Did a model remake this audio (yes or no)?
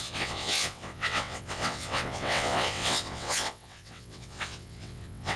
yes